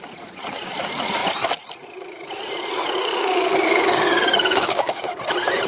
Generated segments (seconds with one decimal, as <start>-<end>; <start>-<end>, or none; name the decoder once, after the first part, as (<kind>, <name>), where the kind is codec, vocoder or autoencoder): 3.0-5.2 (codec, DAC)